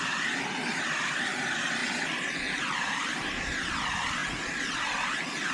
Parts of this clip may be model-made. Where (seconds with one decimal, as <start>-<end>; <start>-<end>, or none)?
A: 0.0-1.8; 2.6-5.5